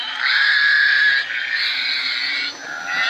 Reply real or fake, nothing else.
real